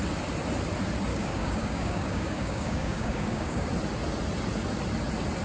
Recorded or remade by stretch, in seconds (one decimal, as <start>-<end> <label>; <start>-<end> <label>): 0.0-1.1 recorded; 1.1-3.7 remade; 3.7-5.4 recorded